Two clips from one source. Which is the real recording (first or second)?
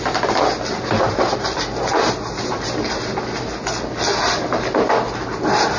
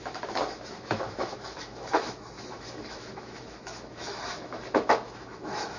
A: first